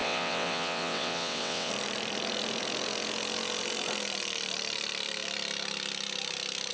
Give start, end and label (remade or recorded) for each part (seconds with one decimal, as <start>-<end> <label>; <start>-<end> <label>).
0.0-1.7 remade; 1.7-6.7 recorded